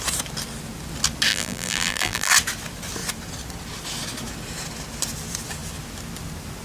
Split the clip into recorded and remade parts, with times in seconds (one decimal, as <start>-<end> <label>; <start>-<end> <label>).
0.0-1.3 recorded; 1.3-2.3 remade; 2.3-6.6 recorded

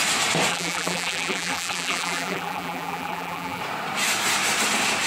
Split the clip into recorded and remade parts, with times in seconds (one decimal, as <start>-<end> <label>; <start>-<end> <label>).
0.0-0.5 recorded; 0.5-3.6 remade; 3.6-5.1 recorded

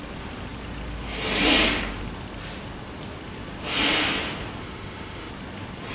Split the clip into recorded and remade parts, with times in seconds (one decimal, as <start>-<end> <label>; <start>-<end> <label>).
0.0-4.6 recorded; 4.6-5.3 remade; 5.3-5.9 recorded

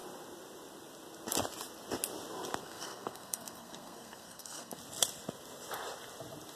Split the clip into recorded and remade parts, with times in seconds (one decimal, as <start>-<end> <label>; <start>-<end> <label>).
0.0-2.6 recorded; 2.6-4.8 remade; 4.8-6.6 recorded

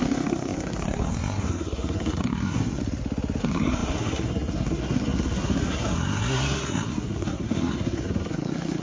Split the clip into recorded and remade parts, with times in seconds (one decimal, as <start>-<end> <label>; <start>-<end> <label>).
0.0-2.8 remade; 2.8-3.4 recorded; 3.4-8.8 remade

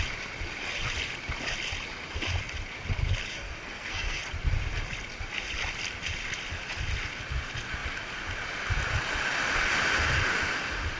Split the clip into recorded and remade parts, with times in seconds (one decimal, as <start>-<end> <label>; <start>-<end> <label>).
0.0-3.3 recorded; 3.3-4.2 remade; 4.2-11.0 recorded